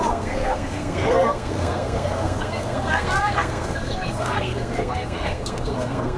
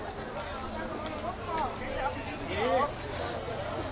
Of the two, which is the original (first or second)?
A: second